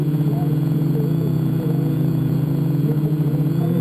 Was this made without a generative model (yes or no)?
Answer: no